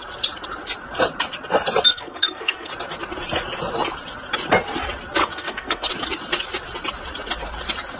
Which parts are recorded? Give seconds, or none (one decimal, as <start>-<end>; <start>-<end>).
0.0-1.9; 2.7-5.2; 5.9-8.0